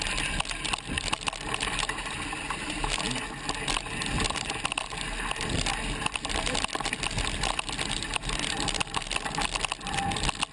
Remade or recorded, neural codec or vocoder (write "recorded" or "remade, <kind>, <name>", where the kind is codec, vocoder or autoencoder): recorded